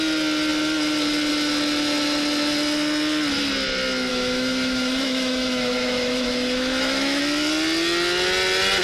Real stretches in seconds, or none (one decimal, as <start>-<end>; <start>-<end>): 0.0-4.1; 7.2-8.8